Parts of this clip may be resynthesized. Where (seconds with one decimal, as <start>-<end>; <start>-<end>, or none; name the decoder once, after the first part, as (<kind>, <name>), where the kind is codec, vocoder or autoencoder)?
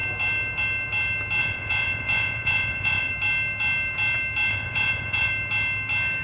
1.4-3.1 (vocoder, Vocos); 4.5-5.3